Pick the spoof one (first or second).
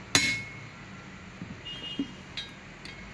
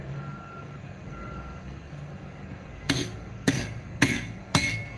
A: second